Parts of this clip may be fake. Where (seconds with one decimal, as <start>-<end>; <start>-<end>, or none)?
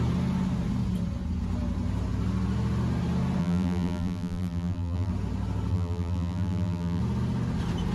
3.4-5.1; 5.7-7.0